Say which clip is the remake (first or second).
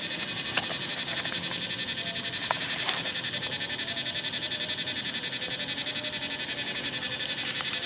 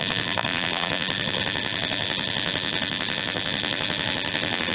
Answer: second